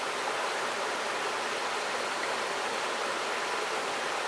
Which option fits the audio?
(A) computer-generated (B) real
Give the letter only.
B